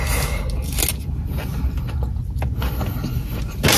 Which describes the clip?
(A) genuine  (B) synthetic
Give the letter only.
A